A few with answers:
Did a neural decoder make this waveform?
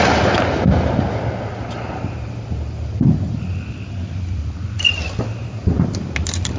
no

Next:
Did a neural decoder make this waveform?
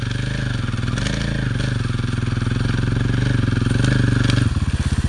no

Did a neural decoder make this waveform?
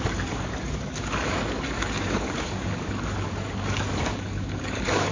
yes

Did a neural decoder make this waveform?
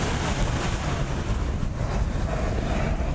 no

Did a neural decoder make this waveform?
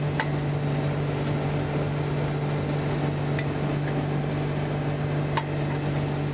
no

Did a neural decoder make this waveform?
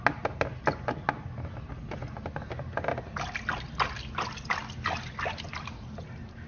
no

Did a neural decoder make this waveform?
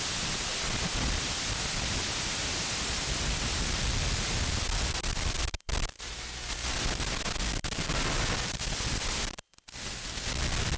no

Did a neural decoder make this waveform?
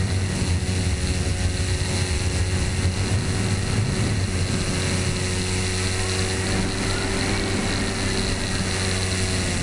no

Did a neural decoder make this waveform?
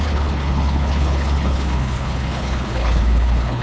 yes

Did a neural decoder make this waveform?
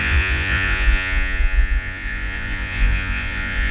yes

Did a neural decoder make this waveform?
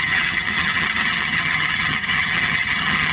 yes